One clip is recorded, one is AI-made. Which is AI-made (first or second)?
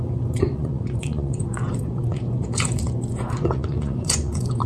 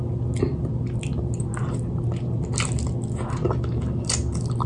first